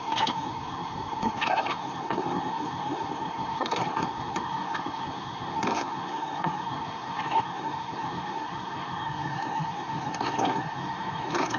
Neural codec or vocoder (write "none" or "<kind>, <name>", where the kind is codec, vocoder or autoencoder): codec, SNAC